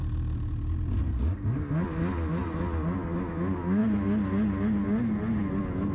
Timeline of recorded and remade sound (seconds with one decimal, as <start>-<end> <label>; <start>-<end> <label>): 0.0-5.9 recorded